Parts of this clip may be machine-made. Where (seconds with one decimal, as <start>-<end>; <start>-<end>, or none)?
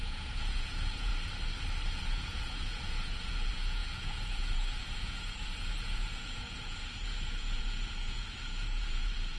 0.0-1.1; 2.0-9.4